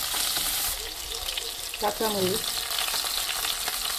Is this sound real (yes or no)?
yes